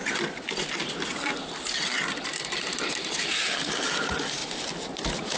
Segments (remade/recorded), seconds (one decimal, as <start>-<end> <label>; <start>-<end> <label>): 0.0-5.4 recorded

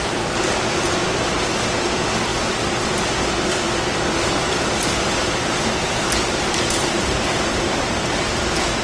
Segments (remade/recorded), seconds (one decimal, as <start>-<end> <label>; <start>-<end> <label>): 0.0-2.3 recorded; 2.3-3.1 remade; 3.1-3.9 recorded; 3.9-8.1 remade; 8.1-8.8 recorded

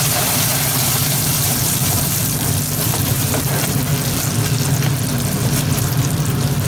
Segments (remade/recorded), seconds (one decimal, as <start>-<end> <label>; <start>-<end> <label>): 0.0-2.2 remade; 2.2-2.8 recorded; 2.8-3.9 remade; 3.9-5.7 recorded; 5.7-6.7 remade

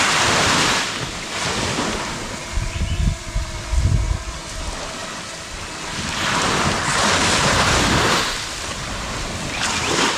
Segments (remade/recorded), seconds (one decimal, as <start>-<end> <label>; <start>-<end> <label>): 0.0-5.0 recorded; 5.0-6.3 remade; 6.3-10.2 recorded

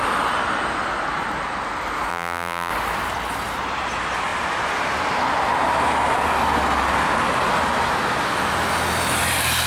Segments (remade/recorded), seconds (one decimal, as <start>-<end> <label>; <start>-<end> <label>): 0.0-2.1 recorded; 2.1-2.7 remade; 2.7-9.7 recorded